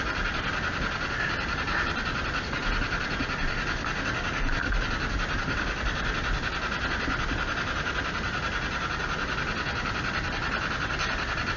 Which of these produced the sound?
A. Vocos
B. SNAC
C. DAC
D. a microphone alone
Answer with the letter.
D